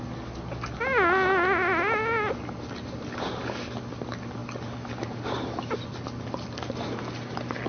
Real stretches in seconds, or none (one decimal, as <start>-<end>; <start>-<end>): 0.0-7.7